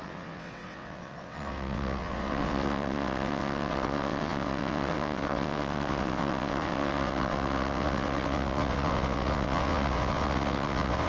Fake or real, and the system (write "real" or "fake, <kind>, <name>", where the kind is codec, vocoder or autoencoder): fake, vocoder, WaveNeXt